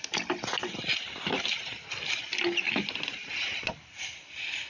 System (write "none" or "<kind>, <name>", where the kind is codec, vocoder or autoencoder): none